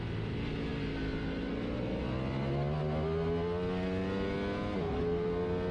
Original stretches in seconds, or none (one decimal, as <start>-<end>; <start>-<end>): 0.0-5.7